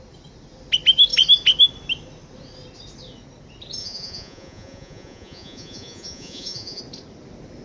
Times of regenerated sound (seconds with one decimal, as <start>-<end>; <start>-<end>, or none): 3.8-6.8